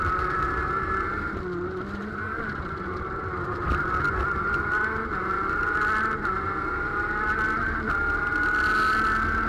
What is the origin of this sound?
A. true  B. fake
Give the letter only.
A